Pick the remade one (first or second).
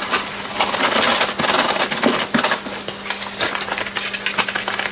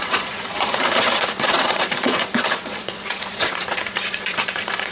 second